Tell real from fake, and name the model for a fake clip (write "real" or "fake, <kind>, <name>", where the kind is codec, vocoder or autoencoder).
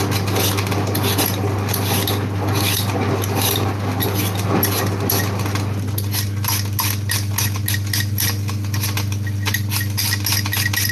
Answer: real